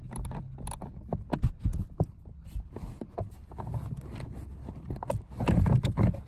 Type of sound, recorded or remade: recorded